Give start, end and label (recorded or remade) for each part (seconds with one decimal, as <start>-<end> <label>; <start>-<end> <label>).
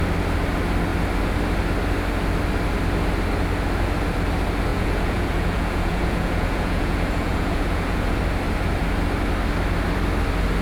0.0-4.7 recorded; 4.7-8.2 remade; 8.2-10.6 recorded